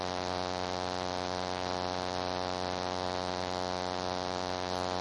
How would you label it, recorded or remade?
recorded